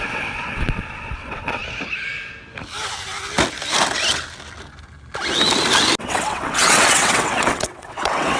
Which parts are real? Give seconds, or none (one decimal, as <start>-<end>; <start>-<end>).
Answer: 1.6-6.0